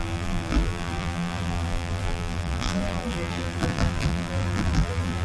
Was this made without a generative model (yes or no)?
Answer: no